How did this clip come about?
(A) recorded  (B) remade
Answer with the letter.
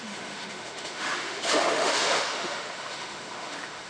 B